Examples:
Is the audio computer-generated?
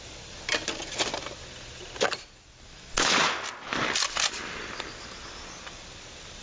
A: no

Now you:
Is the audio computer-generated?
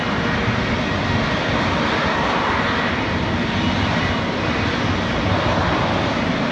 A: no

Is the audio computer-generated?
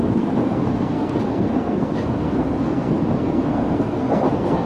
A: yes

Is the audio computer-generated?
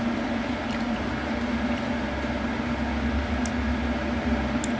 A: no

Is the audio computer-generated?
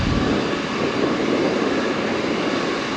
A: no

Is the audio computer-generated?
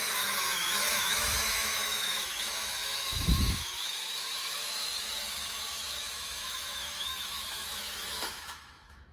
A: yes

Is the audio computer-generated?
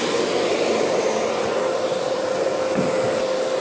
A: no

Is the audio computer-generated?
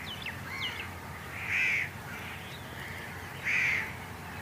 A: yes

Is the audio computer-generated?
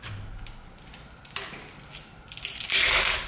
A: no